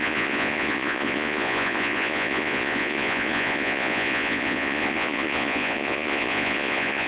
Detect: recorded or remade remade